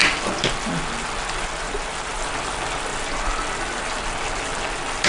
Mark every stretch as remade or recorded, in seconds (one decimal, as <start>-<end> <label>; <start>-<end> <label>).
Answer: 0.0-5.1 recorded